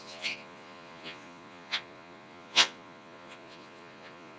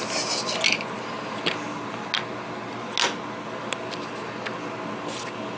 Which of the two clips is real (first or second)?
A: second